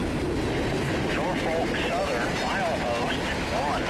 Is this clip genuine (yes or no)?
yes